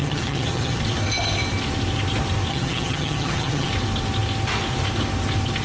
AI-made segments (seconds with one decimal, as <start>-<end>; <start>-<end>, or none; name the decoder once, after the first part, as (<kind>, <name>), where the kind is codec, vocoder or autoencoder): 0.0-0.8 (vocoder, HiFi-GAN); 2.5-3.7